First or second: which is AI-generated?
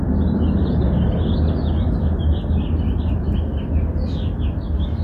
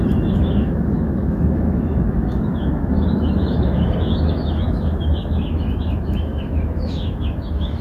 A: second